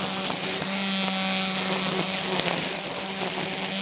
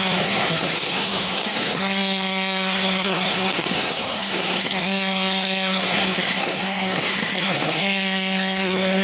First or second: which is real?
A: first